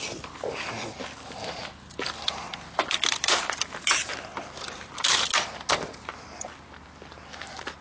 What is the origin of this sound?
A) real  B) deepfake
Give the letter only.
A